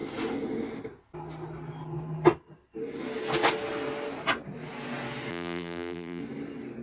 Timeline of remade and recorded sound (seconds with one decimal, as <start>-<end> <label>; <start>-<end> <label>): 0.0-5.3 recorded; 5.3-6.2 remade; 6.2-6.8 recorded